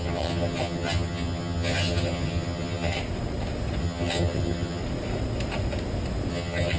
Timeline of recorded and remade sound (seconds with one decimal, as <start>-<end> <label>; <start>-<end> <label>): 0.0-3.0 remade; 3.0-3.8 recorded; 3.8-4.8 remade; 4.8-6.3 recorded; 6.3-6.8 remade